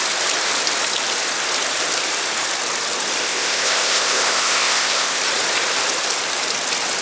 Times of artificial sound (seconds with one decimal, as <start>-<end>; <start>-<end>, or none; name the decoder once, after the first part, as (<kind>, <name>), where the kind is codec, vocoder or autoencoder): 3.2-5.2 (codec, ZipCodec)